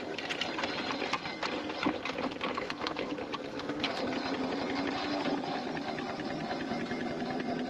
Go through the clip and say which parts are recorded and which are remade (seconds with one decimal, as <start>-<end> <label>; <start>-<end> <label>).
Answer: 0.0-2.5 recorded; 2.5-3.1 remade; 3.1-3.5 recorded; 3.5-4.0 remade; 4.0-7.7 recorded